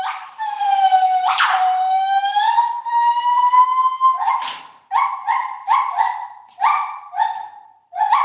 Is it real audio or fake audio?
fake